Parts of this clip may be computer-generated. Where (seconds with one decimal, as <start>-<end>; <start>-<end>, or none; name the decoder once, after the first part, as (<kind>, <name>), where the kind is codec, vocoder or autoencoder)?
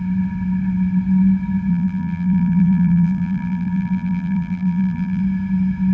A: 1.7-5.2 (vocoder, BigVGAN v2)